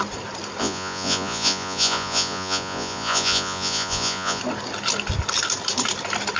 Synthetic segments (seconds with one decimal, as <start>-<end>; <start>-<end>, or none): 0.6-4.4